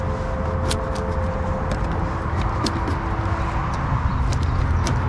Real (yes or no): yes